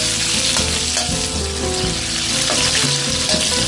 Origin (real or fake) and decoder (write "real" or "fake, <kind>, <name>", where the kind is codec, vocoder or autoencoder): real